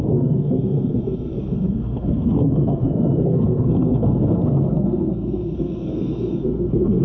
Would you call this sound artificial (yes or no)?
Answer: yes